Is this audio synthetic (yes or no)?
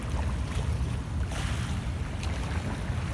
no